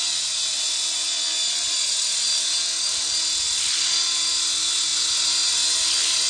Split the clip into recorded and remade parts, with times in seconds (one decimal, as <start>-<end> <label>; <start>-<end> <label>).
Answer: 0.0-6.3 recorded